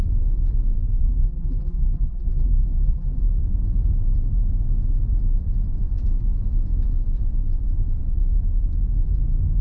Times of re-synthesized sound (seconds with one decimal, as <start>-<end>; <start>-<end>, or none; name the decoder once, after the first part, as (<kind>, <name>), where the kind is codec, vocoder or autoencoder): 1.0-3.2 (vocoder, BigVGAN v2)

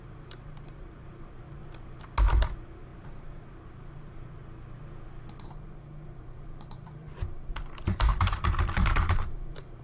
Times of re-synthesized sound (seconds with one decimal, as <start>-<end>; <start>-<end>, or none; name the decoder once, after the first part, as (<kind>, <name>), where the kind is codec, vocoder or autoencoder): 0.0-1.6 (vocoder, BigVGAN v2); 2.3-4.4; 5.8-9.8

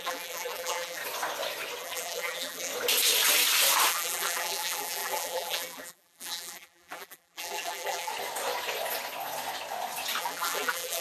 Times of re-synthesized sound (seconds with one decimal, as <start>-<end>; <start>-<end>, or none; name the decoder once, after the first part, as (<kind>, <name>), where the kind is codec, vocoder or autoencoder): 0.0-1.0 (vocoder, BigVGAN v2); 1.8-2.7; 3.9-8.1; 10.2-11.0

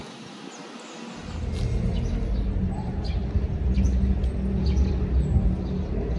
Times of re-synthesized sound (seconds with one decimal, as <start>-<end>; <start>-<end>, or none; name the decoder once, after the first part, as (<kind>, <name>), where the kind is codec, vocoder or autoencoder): none

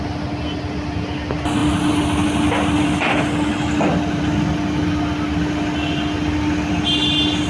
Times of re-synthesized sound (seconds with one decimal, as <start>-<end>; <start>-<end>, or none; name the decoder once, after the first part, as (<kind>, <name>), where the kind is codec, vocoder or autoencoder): none